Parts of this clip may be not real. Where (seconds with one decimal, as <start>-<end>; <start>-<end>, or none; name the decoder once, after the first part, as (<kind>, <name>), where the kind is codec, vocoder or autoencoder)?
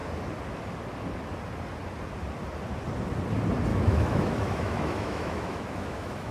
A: 3.7-6.3 (autoencoder, DAC-VAE)